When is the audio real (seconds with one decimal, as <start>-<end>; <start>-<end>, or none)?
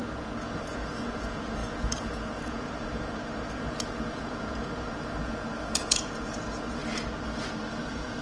6.8-7.7